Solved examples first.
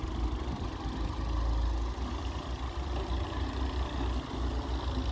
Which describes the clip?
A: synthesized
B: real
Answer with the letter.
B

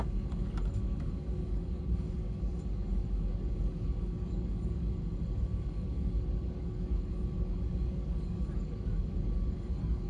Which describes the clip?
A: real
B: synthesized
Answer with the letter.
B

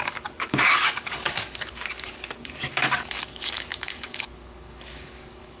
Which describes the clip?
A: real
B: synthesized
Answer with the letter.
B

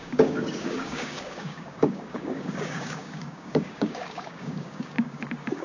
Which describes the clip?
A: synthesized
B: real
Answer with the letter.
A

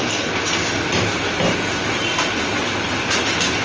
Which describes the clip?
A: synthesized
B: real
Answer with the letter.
B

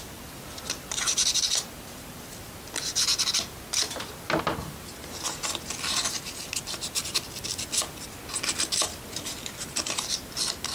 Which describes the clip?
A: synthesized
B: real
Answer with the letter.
B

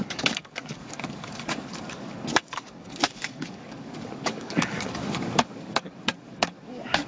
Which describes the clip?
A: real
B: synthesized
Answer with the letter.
B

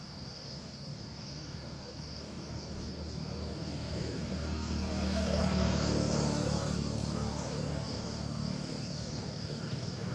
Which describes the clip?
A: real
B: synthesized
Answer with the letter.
B